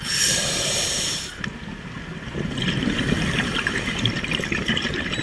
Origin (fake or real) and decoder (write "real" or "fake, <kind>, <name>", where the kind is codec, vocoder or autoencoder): fake, vocoder, BigVGAN v2